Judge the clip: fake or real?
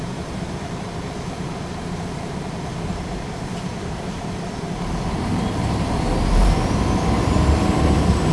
fake